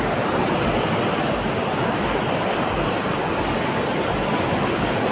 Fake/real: real